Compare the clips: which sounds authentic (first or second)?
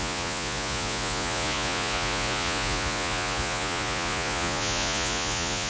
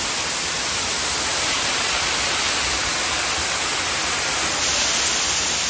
second